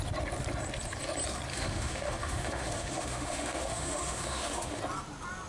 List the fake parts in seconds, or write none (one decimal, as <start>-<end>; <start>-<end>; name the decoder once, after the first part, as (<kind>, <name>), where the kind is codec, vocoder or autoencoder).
1.5-4.8 (autoencoder, DAC-VAE)